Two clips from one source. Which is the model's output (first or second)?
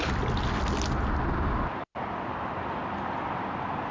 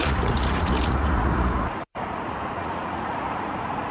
second